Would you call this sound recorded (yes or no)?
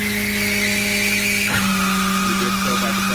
yes